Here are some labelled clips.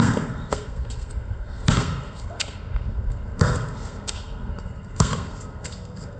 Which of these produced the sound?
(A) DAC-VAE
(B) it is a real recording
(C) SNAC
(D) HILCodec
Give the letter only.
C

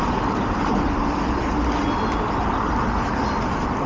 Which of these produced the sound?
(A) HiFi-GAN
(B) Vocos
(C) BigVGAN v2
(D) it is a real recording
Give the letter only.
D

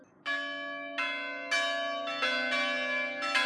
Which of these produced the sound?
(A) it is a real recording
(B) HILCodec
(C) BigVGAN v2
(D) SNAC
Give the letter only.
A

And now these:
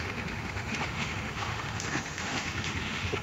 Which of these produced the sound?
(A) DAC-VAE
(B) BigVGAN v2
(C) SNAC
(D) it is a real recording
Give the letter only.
A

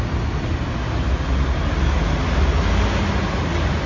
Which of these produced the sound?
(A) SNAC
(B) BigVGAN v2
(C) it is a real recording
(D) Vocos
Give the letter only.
C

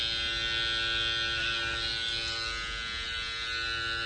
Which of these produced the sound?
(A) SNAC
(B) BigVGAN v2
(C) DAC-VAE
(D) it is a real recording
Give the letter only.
D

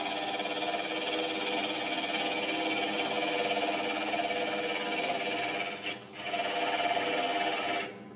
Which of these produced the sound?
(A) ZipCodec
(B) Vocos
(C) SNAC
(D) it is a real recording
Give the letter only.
D